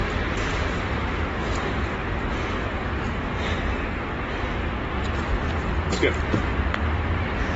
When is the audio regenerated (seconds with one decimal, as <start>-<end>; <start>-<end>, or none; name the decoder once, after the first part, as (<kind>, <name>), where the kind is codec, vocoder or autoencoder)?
0.0-1.2 (vocoder, BigVGAN v2); 6.5-7.6